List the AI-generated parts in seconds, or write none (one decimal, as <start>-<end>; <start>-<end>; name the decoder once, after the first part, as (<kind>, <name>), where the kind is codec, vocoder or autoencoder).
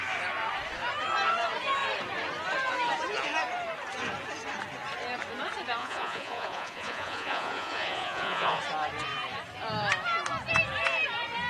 5.8-8.6 (vocoder, Vocos)